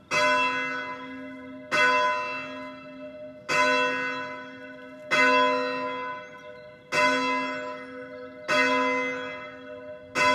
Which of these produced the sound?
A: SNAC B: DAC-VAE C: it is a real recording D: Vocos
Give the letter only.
C